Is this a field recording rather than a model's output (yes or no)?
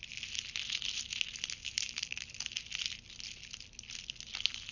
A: yes